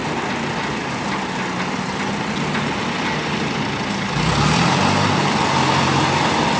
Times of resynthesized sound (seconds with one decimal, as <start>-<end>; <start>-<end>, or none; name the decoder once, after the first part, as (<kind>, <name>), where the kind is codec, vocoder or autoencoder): none